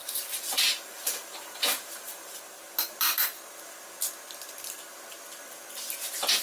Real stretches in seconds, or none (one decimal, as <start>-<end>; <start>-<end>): 2.4-6.4